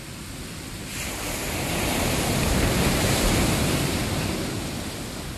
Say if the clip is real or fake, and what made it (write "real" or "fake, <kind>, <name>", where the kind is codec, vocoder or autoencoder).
real